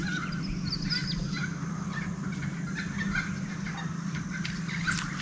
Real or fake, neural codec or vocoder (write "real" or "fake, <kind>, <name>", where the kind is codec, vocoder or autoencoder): real